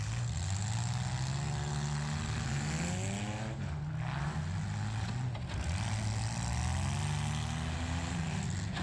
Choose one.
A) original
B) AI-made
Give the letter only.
A